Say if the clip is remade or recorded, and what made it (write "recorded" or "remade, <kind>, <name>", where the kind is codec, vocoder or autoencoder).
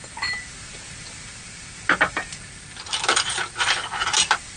remade, vocoder, BigVGAN v2